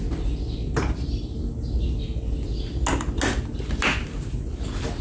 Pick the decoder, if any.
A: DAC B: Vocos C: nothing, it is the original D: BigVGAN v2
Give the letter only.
C